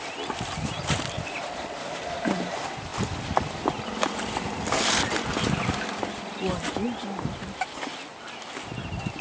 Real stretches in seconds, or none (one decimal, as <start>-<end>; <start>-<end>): 8.1-9.2